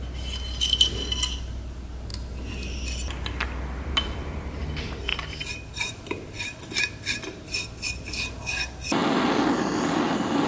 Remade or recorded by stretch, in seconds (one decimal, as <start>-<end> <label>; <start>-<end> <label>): 0.0-10.5 recorded